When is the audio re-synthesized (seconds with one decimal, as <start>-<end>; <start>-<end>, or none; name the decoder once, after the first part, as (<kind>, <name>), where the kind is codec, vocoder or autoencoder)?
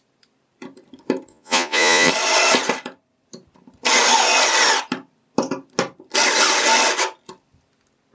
1.3-2.1 (vocoder, Vocos)